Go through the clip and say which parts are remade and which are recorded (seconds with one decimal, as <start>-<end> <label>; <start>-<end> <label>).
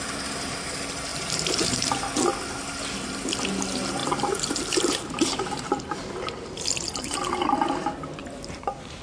0.0-1.1 recorded; 1.1-1.9 remade; 1.9-8.2 recorded; 8.2-9.0 remade